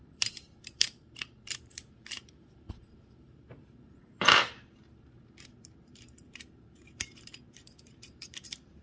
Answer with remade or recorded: remade